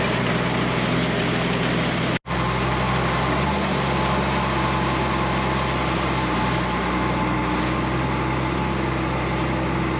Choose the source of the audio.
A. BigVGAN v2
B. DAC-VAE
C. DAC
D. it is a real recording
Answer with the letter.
D